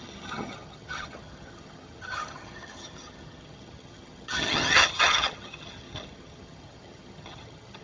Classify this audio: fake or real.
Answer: fake